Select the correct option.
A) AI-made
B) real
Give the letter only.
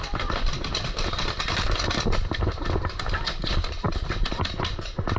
B